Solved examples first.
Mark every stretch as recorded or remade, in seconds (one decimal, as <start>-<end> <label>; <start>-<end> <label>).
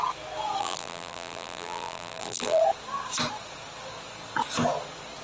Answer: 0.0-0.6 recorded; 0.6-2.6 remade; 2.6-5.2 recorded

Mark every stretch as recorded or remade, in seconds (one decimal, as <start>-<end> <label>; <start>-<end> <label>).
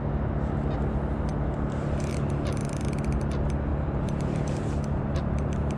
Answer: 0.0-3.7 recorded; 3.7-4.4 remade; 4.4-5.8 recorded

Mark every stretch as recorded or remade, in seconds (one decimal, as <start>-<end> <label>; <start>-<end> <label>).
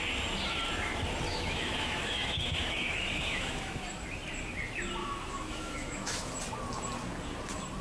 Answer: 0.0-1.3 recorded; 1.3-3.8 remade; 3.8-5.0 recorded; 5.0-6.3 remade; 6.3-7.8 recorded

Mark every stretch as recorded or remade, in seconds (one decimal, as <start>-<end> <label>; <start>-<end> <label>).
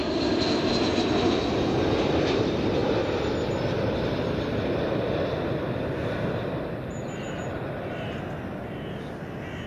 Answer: 0.0-9.7 recorded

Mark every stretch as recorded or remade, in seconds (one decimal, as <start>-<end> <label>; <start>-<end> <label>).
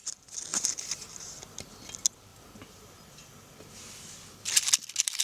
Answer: 0.0-0.5 recorded; 0.5-1.7 remade; 1.7-2.3 recorded; 2.3-2.9 remade; 2.9-5.2 recorded